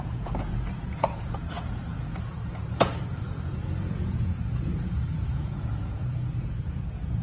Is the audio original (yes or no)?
no